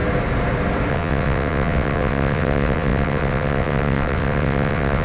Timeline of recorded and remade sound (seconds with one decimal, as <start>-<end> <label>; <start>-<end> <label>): 0.0-0.9 recorded; 0.9-5.0 remade